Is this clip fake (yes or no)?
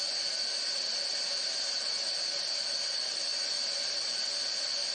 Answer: no